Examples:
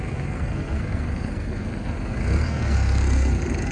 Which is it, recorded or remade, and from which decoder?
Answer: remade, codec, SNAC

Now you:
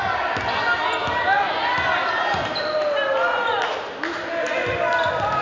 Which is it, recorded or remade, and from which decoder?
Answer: recorded